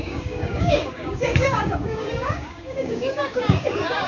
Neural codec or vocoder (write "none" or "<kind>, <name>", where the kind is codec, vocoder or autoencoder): codec, DAC